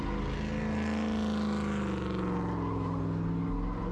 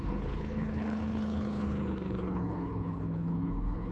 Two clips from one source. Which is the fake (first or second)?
second